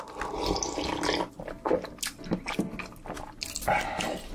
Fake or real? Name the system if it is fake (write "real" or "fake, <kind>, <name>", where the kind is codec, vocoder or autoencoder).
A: real